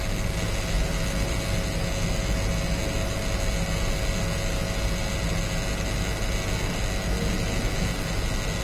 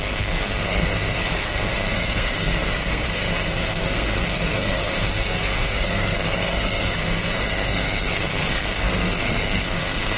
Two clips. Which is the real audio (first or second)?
first